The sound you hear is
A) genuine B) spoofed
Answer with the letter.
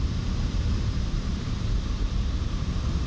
B